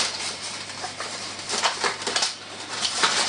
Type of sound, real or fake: fake